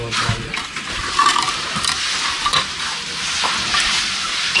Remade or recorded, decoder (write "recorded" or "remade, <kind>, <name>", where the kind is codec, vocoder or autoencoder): recorded